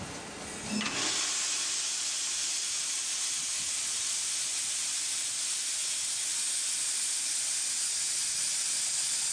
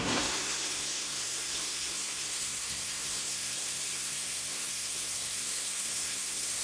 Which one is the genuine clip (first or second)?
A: first